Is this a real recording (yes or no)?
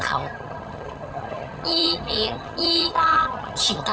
no